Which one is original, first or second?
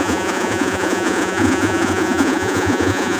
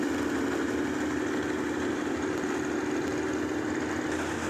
second